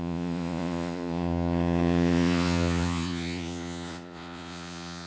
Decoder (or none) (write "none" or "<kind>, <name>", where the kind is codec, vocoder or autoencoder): vocoder, Vocos